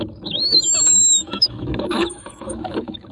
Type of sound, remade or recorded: remade